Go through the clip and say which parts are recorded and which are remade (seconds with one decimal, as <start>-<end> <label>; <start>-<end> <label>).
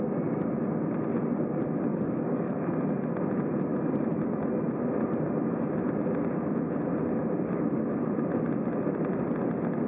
0.0-1.9 recorded; 1.9-2.7 remade; 2.7-9.9 recorded